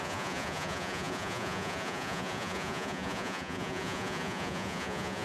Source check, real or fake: fake